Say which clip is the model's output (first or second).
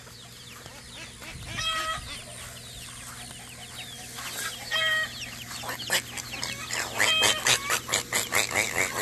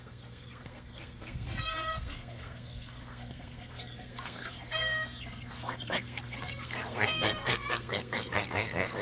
second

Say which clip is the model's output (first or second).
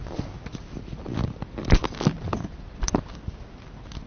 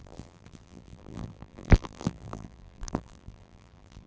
second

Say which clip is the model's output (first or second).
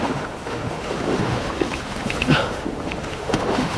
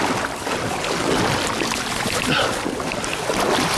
first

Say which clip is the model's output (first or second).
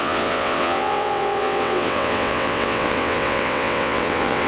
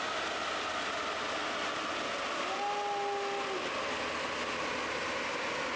first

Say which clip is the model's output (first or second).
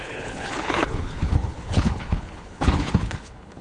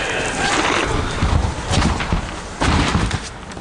first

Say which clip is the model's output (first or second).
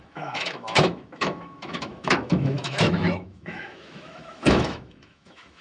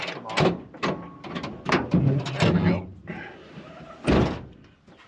first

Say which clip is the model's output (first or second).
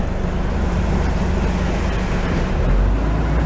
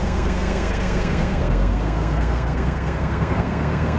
second